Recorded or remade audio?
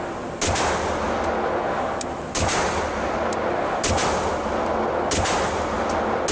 recorded